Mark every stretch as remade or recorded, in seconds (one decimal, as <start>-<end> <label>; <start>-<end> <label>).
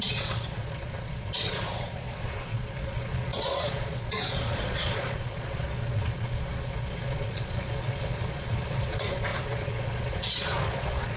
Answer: 0.0-11.2 remade